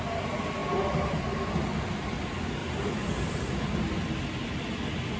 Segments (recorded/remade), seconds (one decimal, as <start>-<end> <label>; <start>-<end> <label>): 0.0-2.6 recorded; 2.6-3.4 remade; 3.4-5.2 recorded